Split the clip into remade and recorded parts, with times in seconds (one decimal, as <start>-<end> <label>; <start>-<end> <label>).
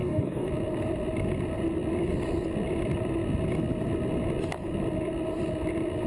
0.0-0.5 remade; 0.5-6.1 recorded